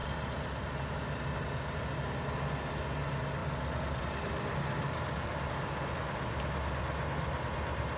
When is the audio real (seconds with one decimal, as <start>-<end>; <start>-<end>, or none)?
0.0-8.0